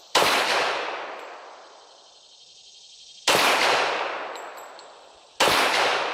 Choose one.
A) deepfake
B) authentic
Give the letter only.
B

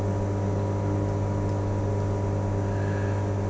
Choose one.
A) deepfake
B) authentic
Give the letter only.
B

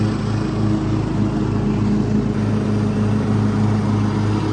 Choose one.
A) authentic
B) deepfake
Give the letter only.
A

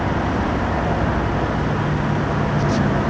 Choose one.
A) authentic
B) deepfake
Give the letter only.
A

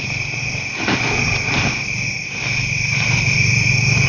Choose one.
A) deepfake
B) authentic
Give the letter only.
B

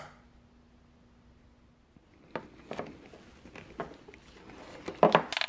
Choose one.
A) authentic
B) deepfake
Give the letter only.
A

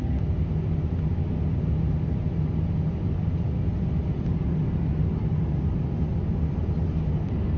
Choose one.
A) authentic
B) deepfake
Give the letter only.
A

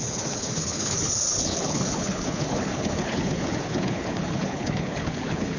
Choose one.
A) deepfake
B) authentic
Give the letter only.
A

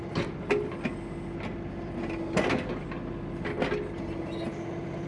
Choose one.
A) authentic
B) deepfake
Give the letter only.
A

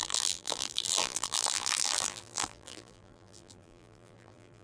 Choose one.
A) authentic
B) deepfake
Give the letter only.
B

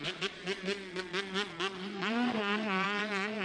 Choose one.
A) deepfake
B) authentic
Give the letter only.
A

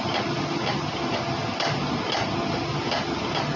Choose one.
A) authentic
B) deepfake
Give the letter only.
A